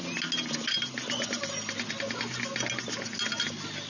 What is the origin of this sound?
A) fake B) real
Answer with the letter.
B